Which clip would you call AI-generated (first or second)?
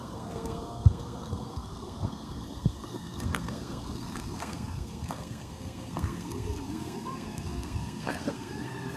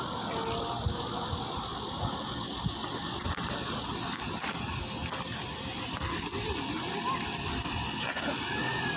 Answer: first